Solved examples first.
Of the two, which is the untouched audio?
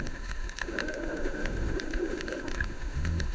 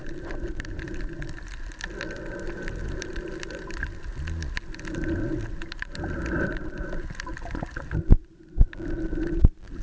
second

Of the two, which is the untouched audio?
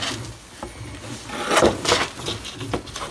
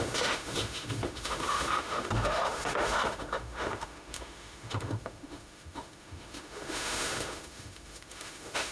first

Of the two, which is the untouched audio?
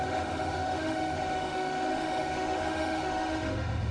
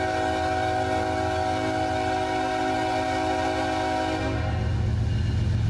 second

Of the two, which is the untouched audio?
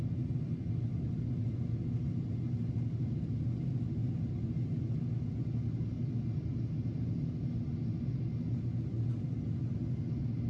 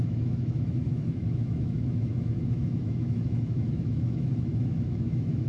first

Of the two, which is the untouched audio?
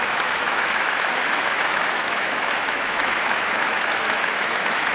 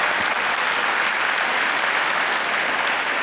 second